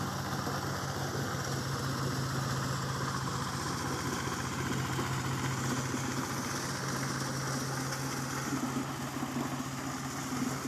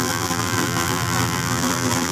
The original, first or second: first